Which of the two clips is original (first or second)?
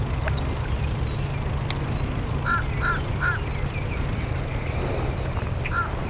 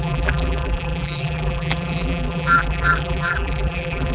first